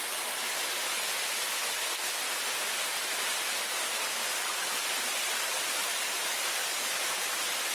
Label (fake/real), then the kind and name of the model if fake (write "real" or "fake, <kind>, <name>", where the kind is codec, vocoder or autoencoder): real